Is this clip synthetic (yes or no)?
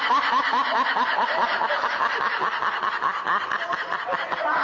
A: no